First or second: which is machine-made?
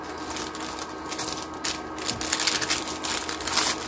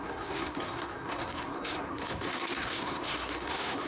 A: second